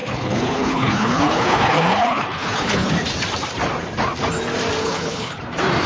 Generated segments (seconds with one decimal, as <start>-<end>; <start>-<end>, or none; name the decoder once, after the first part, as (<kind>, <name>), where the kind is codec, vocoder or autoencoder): 0.0-2.9 (codec, HILCodec); 4.8-5.4